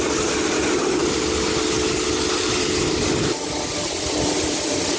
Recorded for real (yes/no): yes